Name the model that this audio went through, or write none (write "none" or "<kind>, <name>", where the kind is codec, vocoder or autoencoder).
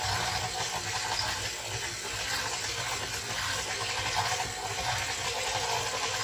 none